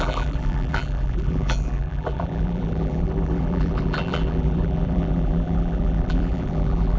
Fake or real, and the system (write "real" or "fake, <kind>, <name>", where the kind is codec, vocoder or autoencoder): fake, vocoder, BigVGAN v2